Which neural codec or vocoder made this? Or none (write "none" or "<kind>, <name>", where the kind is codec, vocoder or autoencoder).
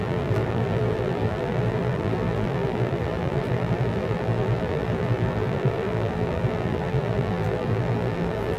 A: vocoder, BigVGAN v2